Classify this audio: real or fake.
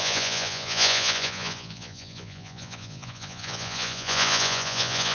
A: fake